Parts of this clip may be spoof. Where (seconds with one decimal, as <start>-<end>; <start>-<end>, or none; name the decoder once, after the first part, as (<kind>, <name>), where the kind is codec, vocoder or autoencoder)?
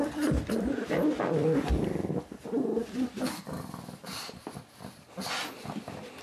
1.4-5.1 (vocoder, BigVGAN v2)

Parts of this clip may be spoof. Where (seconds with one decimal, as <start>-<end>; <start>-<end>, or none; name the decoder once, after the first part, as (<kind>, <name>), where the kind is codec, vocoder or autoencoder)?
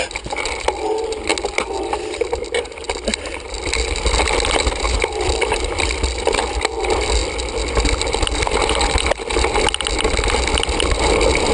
none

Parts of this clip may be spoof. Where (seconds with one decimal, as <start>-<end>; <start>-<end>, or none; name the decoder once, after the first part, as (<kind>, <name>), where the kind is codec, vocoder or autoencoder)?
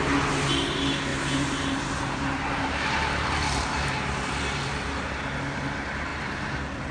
1.1-5.1 (vocoder, BigVGAN v2)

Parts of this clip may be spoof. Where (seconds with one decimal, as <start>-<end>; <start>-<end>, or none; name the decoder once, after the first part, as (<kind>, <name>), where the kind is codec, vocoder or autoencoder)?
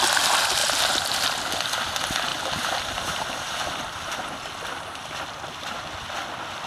0.6-1.2 (vocoder, BigVGAN v2); 2.3-4.4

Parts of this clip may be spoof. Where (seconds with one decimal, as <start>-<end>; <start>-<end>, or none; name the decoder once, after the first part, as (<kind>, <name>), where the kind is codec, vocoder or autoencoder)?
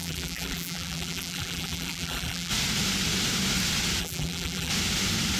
0.0-2.5 (vocoder, BigVGAN v2); 4.0-4.7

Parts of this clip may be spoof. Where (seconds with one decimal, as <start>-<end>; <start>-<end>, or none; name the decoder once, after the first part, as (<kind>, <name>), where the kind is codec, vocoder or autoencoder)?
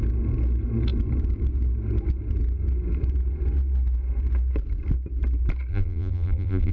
5.7-6.7 (vocoder, BigVGAN v2)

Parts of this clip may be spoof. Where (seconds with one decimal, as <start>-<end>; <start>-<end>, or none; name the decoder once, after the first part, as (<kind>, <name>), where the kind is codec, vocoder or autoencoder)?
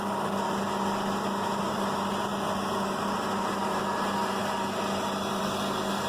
none